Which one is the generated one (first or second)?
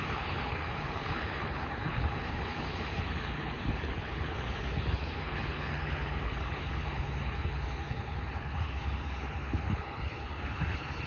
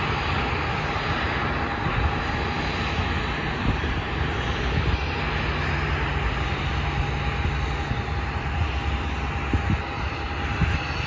first